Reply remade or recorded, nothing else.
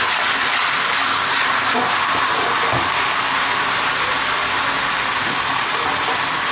recorded